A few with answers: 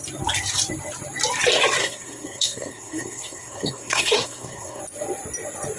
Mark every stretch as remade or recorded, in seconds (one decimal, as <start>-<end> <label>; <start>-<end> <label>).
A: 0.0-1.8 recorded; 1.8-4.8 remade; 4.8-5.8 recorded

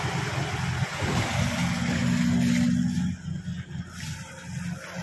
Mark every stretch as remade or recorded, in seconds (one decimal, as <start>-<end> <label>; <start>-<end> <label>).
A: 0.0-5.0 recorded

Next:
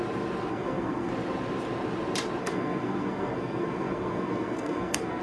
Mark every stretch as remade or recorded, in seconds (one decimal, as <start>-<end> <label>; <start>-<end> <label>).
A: 0.0-0.5 recorded; 0.5-1.1 remade; 1.1-2.4 recorded; 2.4-5.2 remade